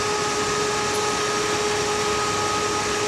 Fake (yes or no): no